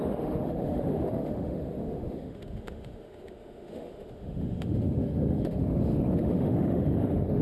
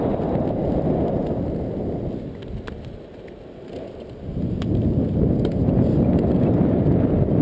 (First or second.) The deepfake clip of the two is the first